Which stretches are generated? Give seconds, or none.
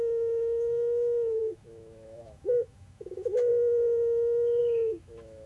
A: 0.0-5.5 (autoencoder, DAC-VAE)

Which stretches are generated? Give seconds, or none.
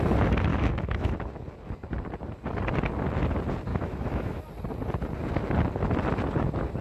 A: 0.5-1.1 (autoencoder, DAC-VAE); 3.7-4.4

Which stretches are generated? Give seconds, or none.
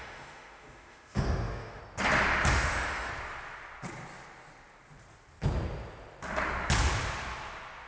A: 0.0-1.8 (autoencoder, DAC-VAE); 2.5-3.1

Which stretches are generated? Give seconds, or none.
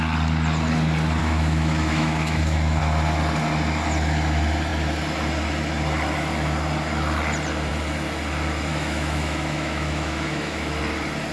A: 1.2-2.8 (autoencoder, DAC-VAE); 8.7-10.8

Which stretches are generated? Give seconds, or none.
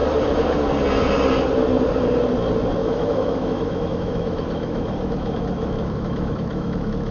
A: 2.8-7.1 (autoencoder, DAC-VAE)